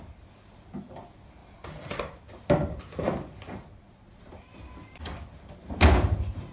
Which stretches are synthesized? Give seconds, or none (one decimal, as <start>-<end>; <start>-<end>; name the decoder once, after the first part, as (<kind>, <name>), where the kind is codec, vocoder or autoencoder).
none